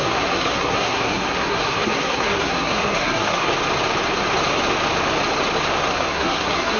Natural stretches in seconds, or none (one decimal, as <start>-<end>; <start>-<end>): 3.5-5.9